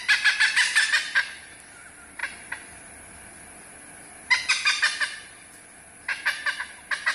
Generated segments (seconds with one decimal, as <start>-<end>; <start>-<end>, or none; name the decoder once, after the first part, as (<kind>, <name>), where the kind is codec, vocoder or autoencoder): none